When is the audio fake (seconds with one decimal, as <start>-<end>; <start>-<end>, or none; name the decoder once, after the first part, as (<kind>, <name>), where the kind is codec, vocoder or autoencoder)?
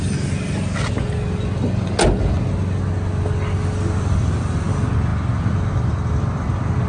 none